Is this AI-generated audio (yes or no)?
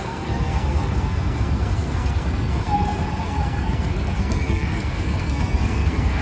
yes